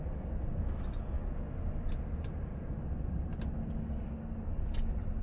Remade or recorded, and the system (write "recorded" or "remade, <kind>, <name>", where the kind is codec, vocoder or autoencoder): recorded